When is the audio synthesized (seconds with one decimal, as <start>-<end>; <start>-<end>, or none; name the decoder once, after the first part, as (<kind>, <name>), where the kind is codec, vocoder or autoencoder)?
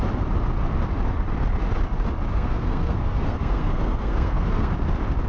2.3-4.7 (codec, SNAC)